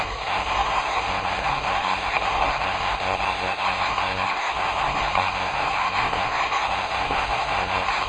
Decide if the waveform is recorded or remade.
remade